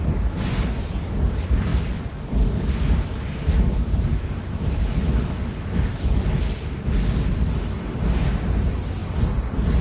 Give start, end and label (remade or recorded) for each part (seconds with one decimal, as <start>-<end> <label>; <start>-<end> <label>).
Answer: 0.0-4.1 recorded; 4.1-6.4 remade; 6.4-9.8 recorded